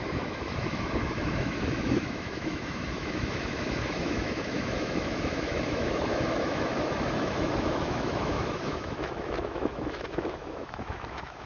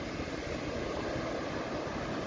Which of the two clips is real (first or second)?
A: second